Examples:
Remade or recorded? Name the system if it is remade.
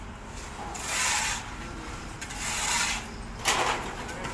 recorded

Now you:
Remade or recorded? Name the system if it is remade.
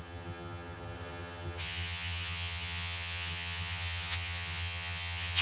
remade, vocoder, HiFi-GAN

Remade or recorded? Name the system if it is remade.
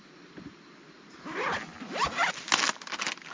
recorded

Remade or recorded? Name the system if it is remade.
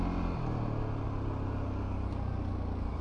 recorded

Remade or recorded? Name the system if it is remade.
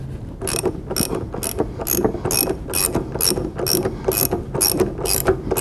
recorded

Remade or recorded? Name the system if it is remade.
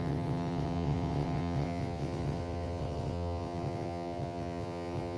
remade, vocoder, WaveNeXt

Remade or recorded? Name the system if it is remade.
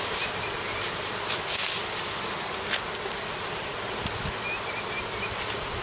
recorded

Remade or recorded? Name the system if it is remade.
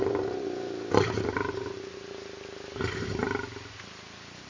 recorded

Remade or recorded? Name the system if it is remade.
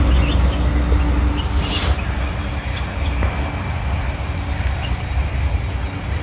recorded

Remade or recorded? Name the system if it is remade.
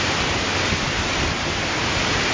recorded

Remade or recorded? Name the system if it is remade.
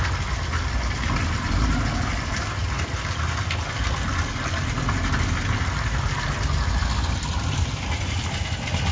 recorded